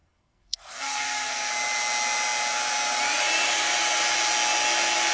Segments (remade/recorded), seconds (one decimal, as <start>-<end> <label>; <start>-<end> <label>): 0.0-1.5 remade; 1.5-5.1 recorded